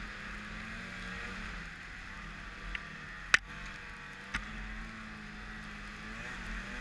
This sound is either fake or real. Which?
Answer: real